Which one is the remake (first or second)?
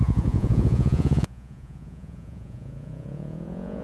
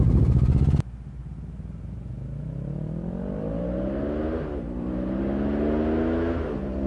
first